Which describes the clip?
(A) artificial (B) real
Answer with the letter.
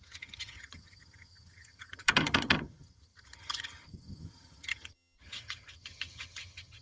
A